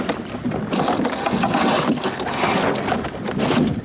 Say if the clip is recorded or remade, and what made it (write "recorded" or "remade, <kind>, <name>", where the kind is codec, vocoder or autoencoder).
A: recorded